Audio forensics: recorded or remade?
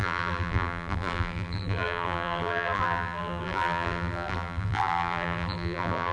remade